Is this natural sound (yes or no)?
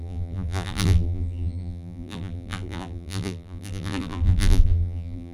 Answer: no